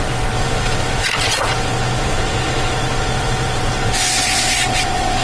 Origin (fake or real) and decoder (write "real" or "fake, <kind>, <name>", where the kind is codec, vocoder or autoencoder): fake, vocoder, Vocos